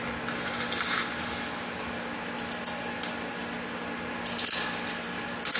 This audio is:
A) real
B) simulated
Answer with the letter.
A